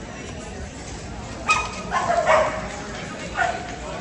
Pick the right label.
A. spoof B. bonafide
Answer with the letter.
B